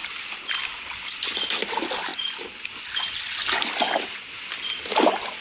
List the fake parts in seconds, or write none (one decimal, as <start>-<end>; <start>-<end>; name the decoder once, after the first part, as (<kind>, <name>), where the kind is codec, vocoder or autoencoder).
0.0-1.6 (vocoder, BigVGAN v2); 2.1-2.6